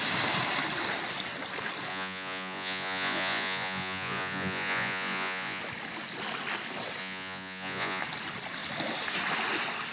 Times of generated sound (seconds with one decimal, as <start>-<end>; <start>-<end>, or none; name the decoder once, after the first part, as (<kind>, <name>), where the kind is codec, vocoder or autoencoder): 1.9-5.6 (vocoder, Vocos); 7.0-8.0